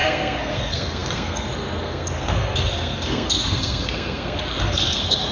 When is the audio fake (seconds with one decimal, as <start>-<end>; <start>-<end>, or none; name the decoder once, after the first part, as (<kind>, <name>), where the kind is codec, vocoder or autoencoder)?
0.0-5.3 (codec, SNAC)